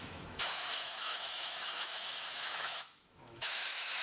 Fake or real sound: fake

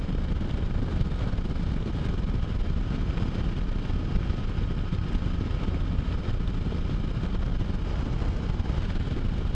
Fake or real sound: real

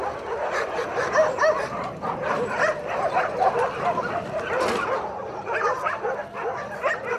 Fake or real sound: real